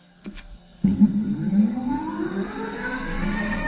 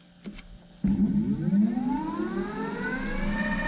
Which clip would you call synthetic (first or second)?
first